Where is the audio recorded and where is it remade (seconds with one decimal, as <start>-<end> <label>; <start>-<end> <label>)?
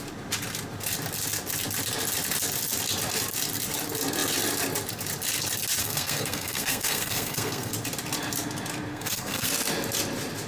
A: 0.0-5.8 recorded; 5.8-7.7 remade; 7.7-8.9 recorded; 8.9-9.5 remade; 9.5-10.5 recorded